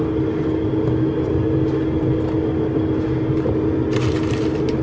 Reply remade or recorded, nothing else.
recorded